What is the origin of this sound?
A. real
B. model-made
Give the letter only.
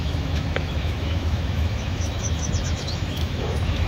B